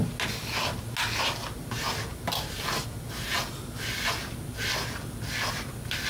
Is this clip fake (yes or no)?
no